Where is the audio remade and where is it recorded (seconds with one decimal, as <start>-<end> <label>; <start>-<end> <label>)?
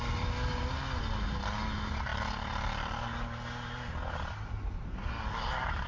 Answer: 0.0-5.9 recorded